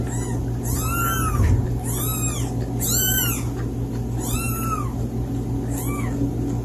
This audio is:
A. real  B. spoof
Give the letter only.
A